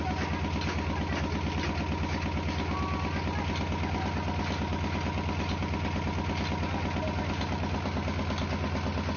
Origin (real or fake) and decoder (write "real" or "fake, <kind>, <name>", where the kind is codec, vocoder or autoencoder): real